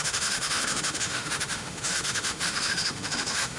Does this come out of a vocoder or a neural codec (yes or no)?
yes